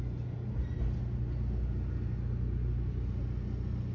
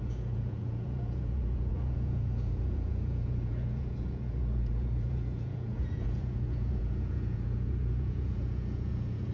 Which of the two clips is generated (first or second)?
second